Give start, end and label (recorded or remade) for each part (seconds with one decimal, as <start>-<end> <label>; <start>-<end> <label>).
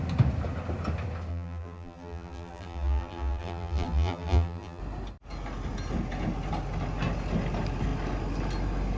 0.0-1.3 recorded; 1.3-4.8 remade; 4.8-9.0 recorded